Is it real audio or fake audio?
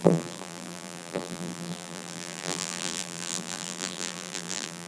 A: fake